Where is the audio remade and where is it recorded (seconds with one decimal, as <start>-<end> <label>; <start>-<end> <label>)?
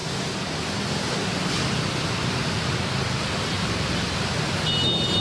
0.0-5.2 recorded